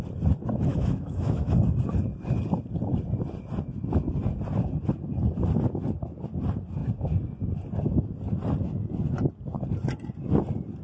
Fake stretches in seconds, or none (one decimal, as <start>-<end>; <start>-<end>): 0.7-1.6